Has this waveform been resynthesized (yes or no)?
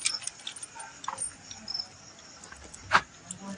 no